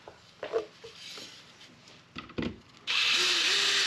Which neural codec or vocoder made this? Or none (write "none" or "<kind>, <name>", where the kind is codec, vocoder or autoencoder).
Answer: none